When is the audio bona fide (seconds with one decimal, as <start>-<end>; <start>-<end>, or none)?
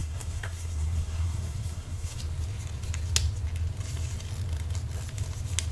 2.2-5.7